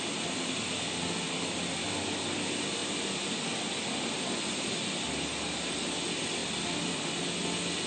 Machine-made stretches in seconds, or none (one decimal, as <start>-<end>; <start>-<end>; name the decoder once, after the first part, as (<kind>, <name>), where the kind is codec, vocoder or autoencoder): none